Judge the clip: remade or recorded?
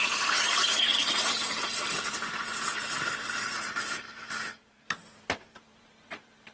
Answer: remade